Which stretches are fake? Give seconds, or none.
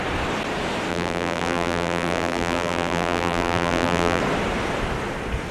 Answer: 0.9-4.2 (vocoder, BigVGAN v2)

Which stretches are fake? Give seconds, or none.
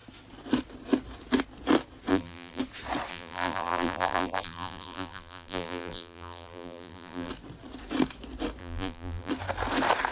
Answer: 2.1-2.6 (vocoder, BigVGAN v2); 3.1-7.3; 8.6-9.3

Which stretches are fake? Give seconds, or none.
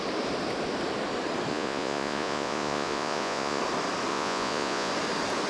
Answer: 1.5-3.6 (vocoder, Vocos); 4.1-4.9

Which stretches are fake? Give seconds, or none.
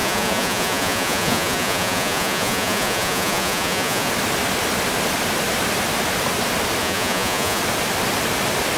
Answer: 0.0-4.1 (vocoder, Vocos); 6.8-7.6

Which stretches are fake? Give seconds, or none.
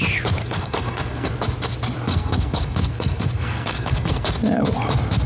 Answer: 0.4-1.3 (codec, SNAC); 2.1-4.3